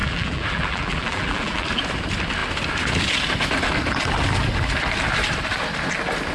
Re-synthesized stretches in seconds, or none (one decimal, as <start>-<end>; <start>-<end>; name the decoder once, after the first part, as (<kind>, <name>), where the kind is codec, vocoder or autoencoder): 0.0-1.8 (vocoder, BigVGAN v2)